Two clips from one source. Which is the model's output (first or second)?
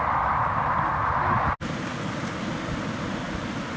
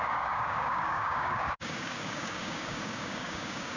second